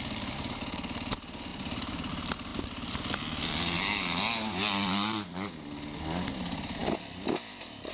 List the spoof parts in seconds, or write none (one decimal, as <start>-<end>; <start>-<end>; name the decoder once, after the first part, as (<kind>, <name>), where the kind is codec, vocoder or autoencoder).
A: none